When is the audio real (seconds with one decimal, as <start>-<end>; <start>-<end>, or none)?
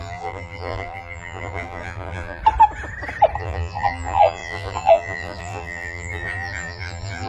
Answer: 2.4-3.4